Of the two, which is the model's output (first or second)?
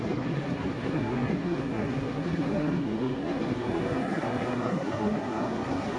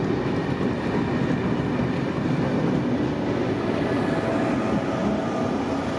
first